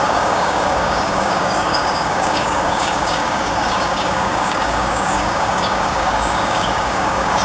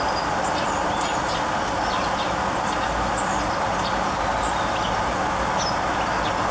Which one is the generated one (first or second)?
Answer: first